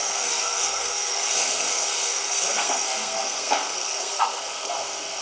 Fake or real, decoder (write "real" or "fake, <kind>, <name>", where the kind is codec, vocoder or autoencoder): fake, codec, SNAC